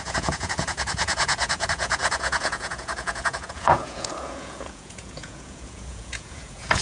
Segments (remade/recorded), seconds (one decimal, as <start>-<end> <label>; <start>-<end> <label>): 0.0-6.8 remade